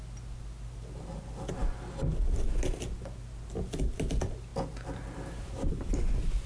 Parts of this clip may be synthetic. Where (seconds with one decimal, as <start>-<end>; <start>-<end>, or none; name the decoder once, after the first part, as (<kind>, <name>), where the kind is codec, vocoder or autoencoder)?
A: none